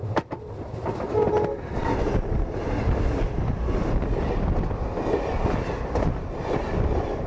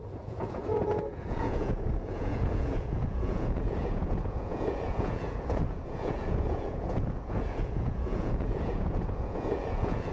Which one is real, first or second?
first